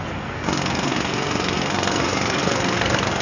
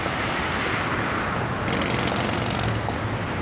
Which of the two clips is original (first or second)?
second